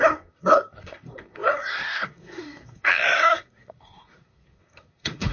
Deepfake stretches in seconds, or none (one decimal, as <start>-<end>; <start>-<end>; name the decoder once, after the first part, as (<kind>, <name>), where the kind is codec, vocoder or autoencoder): 0.0-5.3 (codec, SNAC)

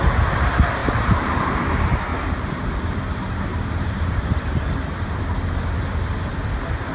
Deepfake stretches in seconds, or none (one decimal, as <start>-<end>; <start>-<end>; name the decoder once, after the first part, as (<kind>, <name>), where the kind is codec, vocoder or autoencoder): 0.8-1.4 (vocoder, BigVGAN v2); 2.1-5.2

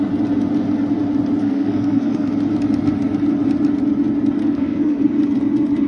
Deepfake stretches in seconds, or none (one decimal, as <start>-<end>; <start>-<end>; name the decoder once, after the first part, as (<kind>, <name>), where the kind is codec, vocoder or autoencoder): 1.4-2.3 (codec, SNAC); 4.4-5.0

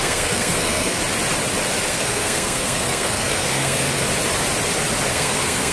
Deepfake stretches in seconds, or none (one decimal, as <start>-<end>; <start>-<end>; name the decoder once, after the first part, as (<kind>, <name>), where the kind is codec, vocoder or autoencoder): 0.0-1.0 (codec, SNAC); 1.9-3.9; 5.1-5.7

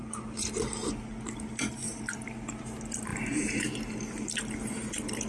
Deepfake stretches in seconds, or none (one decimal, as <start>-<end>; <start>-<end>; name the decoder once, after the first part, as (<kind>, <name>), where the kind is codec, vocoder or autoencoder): 1.8-2.5 (vocoder, BigVGAN v2); 3.1-3.6

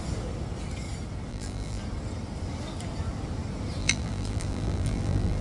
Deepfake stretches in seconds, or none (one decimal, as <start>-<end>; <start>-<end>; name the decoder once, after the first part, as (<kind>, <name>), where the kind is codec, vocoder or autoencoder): 1.3-1.8 (vocoder, BigVGAN v2); 3.8-5.4

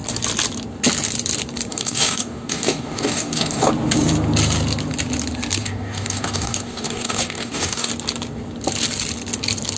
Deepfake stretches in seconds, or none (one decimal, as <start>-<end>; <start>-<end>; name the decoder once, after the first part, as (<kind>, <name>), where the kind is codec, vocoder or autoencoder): 1.7-3.7 (codec, DAC); 5.6-7.9